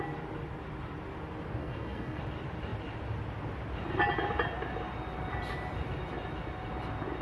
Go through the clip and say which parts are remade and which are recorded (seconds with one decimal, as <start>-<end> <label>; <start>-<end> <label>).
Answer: 0.0-1.6 recorded; 1.6-2.2 remade; 2.2-7.2 recorded